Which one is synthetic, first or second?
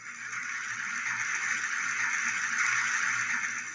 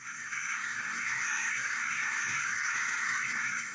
second